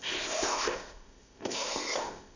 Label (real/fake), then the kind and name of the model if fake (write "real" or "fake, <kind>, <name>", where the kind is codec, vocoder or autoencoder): fake, codec, ZipCodec